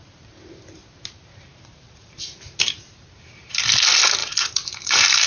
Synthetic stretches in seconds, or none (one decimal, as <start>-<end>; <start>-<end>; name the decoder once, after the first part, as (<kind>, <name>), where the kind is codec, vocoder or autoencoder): 1.5-3.5 (vocoder, BigVGAN v2); 4.2-5.3